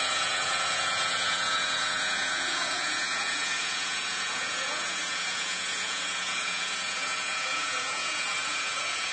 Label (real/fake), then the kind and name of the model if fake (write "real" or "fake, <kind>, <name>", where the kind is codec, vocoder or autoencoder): fake, vocoder, Vocos